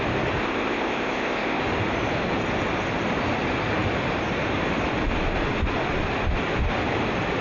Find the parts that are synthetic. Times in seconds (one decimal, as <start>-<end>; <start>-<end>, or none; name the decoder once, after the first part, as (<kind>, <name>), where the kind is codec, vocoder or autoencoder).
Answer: 0.4-1.6 (codec, ZipCodec)